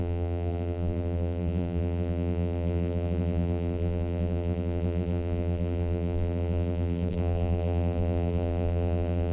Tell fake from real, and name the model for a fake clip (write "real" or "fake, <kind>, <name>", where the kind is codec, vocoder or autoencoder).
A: fake, vocoder, BigVGAN v2